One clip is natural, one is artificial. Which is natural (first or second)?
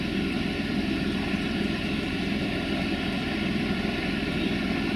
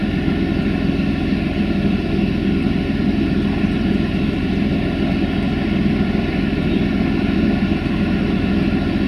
second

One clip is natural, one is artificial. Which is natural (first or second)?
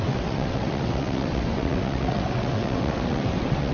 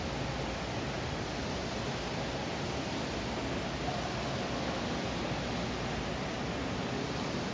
second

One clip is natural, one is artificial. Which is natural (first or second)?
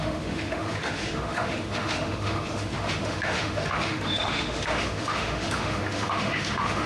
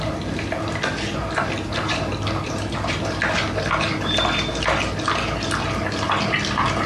second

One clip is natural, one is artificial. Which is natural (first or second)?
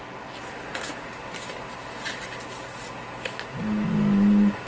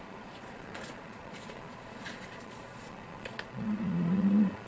first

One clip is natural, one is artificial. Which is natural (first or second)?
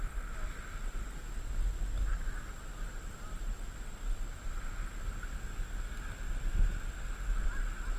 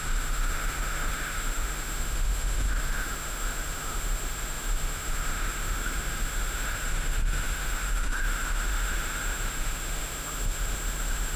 first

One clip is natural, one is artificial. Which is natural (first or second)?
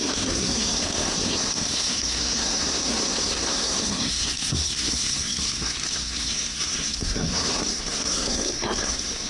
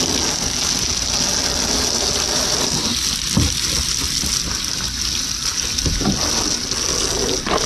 second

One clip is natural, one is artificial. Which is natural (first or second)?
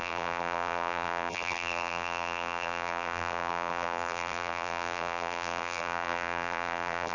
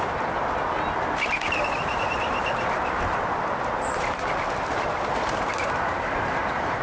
second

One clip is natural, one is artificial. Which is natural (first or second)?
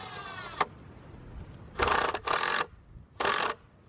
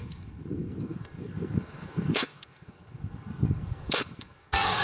first